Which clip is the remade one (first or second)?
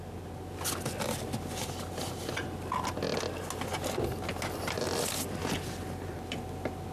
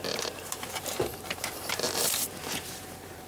second